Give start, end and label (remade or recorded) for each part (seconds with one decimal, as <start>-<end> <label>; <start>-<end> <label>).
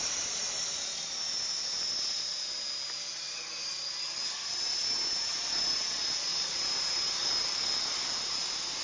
0.0-8.8 recorded